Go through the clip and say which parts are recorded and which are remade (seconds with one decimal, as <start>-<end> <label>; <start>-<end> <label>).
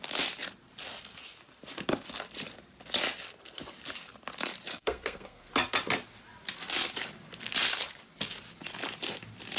0.0-4.7 recorded; 4.7-5.5 remade; 5.5-9.6 recorded